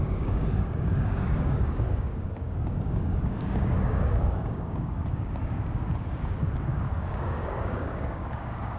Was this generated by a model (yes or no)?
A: yes